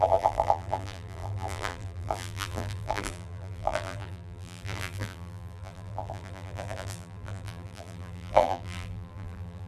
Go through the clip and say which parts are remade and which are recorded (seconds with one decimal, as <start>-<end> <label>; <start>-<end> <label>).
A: 0.0-9.7 remade